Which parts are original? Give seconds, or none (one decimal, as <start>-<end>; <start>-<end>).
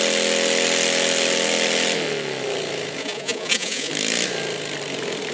0.0-3.0; 3.9-5.3